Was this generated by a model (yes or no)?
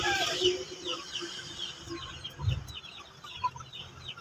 no